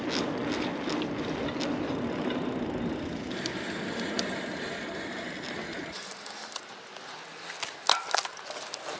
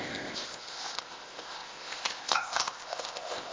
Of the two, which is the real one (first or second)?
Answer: first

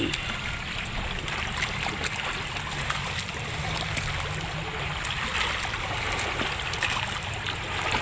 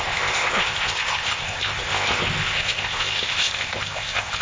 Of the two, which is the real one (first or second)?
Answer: first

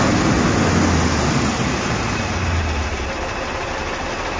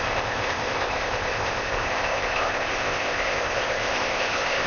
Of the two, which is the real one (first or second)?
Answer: first